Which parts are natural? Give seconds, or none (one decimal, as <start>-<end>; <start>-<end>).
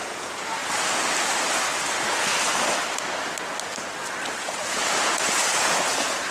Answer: 0.6-4.4